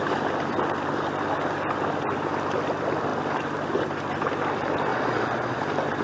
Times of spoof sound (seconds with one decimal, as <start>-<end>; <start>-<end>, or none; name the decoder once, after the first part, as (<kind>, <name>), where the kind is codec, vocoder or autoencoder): 4.9-5.6 (vocoder, Vocos)